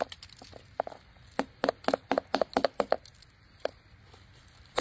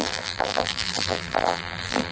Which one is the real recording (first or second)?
first